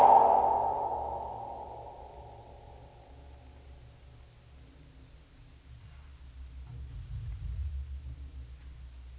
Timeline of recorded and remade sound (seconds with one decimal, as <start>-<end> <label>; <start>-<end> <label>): 0.0-6.9 recorded; 6.9-7.7 remade; 7.7-9.2 recorded